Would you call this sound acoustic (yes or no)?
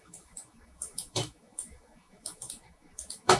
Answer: no